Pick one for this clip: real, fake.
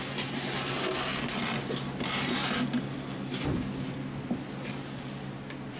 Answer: real